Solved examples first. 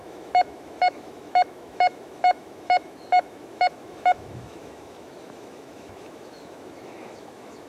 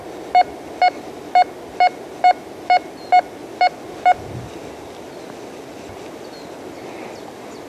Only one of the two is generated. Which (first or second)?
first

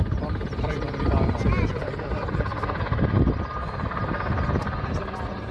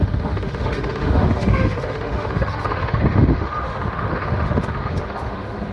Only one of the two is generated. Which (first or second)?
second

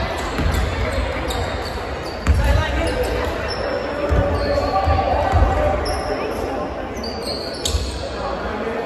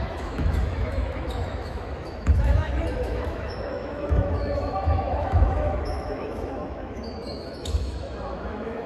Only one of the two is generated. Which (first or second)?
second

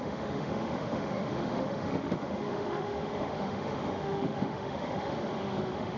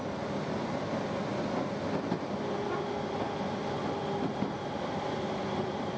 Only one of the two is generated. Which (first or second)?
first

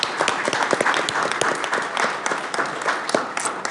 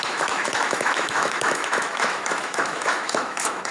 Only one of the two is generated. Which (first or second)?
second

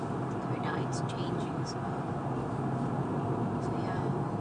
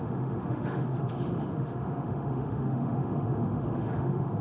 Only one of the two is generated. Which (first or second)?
second